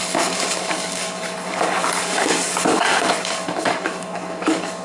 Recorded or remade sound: remade